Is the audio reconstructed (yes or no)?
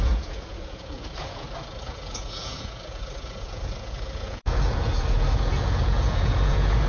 yes